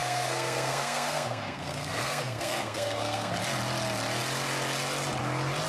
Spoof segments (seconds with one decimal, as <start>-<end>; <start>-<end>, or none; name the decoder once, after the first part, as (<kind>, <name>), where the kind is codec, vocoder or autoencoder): 0.0-3.3 (codec, SNAC)